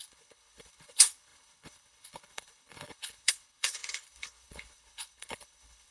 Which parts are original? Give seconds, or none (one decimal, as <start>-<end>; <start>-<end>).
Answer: none